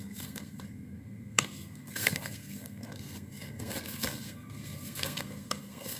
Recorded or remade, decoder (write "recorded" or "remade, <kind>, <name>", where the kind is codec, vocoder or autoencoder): remade, codec, SNAC